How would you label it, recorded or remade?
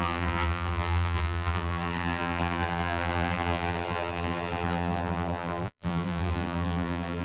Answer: remade